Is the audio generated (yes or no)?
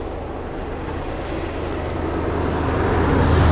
no